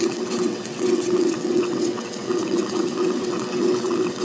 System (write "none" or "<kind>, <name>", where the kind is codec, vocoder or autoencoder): vocoder, WaveNeXt